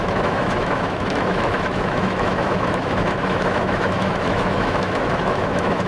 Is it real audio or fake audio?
fake